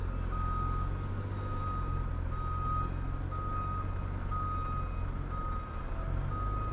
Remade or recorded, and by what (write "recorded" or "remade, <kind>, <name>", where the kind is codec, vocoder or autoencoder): recorded